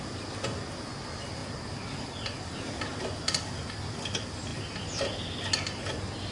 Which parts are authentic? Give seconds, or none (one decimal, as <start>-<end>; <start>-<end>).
0.0-6.3